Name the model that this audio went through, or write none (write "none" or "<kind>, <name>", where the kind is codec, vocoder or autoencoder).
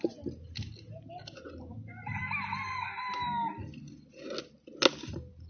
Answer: none